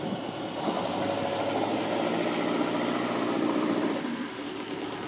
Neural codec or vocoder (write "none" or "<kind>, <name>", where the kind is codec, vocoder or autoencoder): none